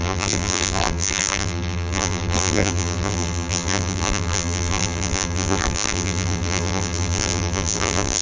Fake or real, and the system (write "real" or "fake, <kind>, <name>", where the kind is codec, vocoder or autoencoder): fake, vocoder, BigVGAN v2